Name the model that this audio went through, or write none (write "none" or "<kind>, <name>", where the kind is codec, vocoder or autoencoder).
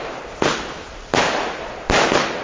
none